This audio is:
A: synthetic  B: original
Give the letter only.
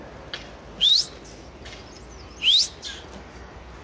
B